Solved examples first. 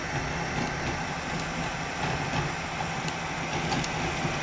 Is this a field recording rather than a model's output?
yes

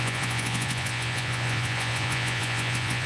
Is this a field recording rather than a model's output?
no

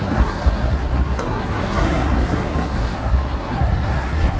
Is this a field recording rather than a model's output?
no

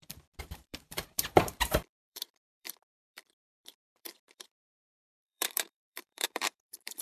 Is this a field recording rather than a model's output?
no